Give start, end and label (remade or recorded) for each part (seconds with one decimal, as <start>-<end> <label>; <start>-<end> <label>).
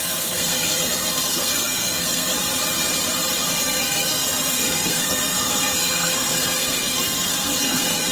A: 0.0-2.3 remade; 2.3-3.4 recorded; 3.4-8.1 remade